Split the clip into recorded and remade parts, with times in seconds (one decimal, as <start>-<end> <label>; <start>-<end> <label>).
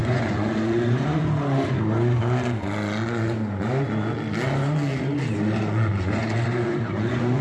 0.0-1.2 remade; 1.2-5.6 recorded; 5.6-7.4 remade